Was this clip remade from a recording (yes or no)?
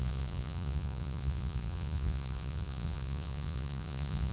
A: yes